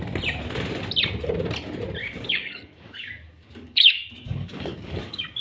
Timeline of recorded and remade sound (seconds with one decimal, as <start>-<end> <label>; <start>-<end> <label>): 0.0-2.0 recorded; 2.0-5.4 remade